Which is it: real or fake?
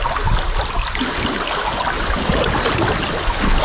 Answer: real